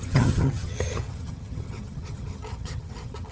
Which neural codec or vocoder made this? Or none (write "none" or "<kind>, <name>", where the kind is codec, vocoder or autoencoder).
vocoder, HiFi-GAN